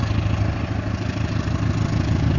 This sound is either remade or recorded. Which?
recorded